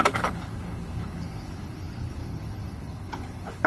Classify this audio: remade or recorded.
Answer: remade